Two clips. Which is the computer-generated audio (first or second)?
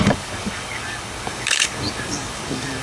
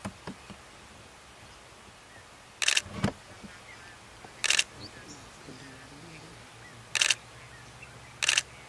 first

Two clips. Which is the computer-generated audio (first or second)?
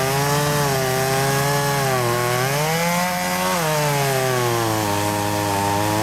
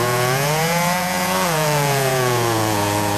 second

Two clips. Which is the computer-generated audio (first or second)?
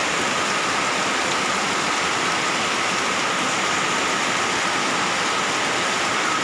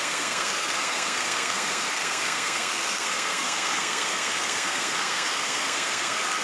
second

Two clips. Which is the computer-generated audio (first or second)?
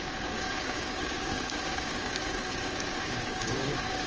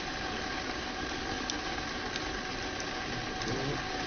first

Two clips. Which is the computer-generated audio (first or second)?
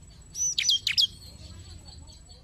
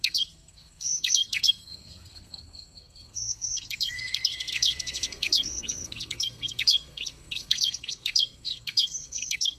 second